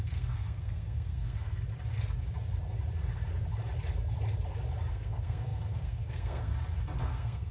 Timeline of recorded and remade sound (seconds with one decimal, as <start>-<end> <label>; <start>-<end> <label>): 0.0-1.5 remade; 1.5-4.9 recorded; 4.9-6.5 remade; 6.5-7.0 recorded; 7.0-7.5 remade